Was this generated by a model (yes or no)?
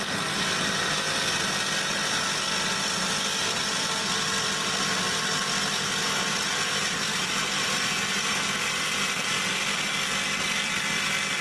no